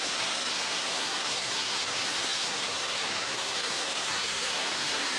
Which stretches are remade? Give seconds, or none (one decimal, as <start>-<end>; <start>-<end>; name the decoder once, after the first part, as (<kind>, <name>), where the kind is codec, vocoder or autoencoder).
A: 0.0-5.2 (codec, SNAC)